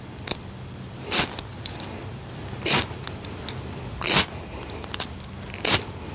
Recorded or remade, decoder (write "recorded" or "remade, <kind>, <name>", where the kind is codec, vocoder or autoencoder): recorded